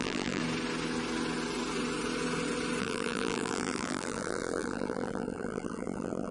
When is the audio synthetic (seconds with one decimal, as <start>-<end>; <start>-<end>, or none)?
0.0-0.4; 2.8-6.3